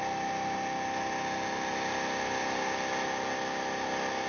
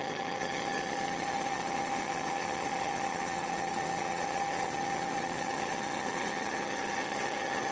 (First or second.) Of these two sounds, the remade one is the second